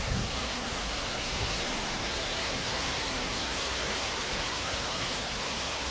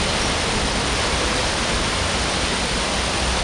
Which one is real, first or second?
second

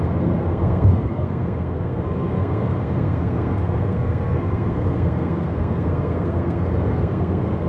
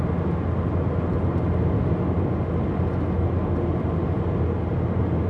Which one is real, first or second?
second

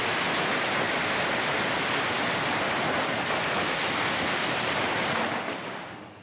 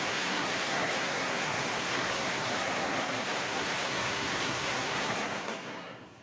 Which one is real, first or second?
first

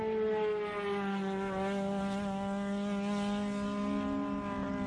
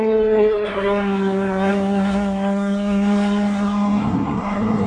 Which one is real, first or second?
first